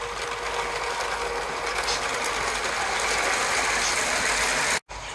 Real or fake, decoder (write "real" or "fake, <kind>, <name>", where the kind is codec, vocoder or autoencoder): real